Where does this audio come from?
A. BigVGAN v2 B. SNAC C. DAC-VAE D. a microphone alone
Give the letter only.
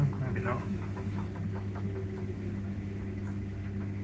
C